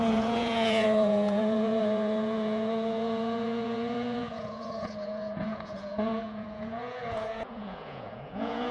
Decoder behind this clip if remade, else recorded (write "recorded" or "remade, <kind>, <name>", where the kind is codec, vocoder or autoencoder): remade, vocoder, Vocos